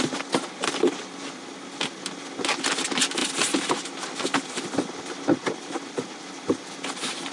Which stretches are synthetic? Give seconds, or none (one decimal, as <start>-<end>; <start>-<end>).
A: none

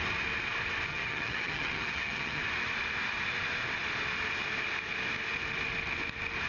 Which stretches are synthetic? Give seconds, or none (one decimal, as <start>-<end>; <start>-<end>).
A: 0.9-2.4

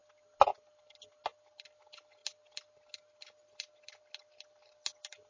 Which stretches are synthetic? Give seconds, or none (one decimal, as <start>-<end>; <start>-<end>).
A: none

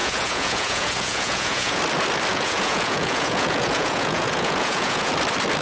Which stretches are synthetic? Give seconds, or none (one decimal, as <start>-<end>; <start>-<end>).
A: 0.0-1.8; 2.3-5.1